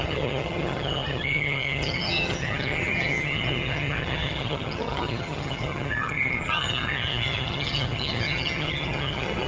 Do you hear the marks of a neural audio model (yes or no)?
yes